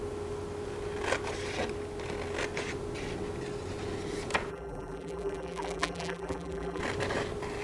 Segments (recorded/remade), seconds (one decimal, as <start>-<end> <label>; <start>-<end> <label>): 0.0-4.5 recorded; 4.5-6.8 remade; 6.8-7.6 recorded